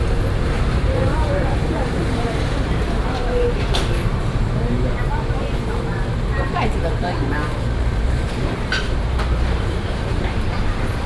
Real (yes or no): no